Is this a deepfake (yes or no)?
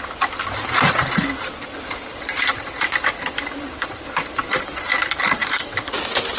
no